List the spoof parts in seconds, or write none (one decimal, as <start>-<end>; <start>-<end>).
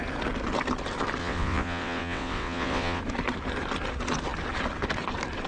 1.2-3.0